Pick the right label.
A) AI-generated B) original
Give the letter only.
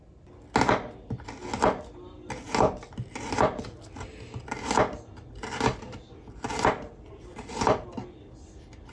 B